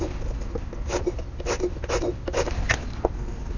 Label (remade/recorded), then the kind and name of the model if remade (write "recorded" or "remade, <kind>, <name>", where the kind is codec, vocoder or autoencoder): recorded